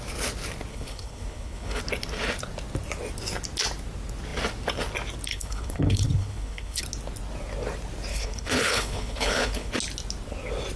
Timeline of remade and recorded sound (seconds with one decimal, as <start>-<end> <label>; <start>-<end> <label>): 0.0-0.7 recorded; 0.7-1.8 remade; 1.8-5.3 recorded; 5.3-6.8 remade; 6.8-8.1 recorded; 8.1-9.7 remade; 9.7-10.8 recorded